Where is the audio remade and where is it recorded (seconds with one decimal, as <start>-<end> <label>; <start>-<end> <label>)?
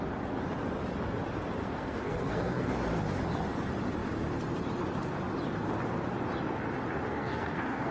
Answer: 0.0-1.6 recorded; 1.6-2.7 remade; 2.7-7.1 recorded; 7.1-7.9 remade